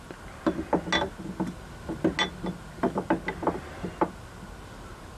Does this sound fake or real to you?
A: real